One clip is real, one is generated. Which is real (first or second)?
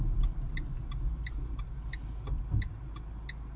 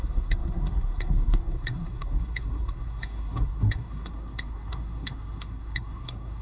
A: first